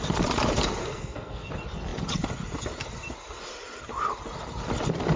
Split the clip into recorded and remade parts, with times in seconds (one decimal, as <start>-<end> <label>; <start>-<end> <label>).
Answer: 0.0-0.8 recorded; 0.8-1.5 remade; 1.5-5.2 recorded